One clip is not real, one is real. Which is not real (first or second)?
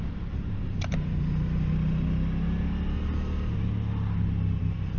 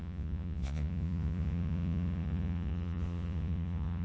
second